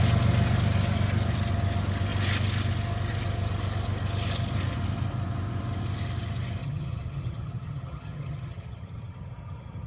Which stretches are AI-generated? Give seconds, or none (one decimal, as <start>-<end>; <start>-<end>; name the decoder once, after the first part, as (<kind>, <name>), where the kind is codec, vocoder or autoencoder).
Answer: 6.6-9.9 (vocoder, HiFi-GAN)